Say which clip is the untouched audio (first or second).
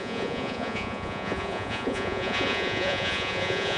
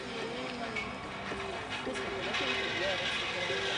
second